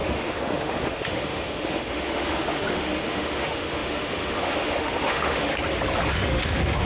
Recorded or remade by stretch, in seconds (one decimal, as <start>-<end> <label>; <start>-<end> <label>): 0.0-5.5 remade; 5.5-6.1 recorded; 6.1-6.9 remade